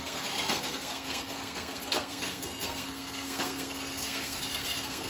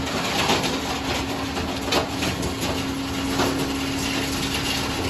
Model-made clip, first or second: first